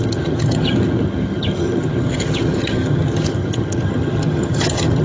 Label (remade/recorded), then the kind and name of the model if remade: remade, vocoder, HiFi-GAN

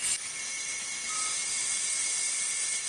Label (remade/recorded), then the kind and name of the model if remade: recorded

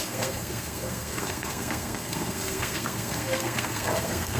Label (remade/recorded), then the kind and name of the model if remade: remade, codec, SNAC